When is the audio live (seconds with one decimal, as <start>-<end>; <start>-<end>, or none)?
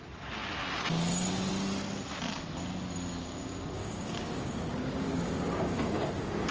0.0-3.1; 6.1-6.5